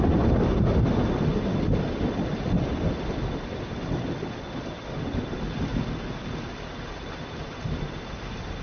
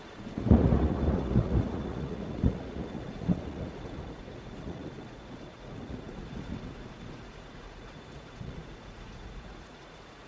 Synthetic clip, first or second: second